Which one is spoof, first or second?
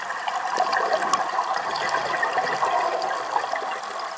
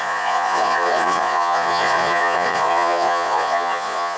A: second